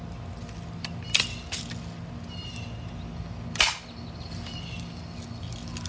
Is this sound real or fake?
real